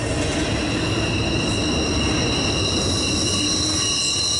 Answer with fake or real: real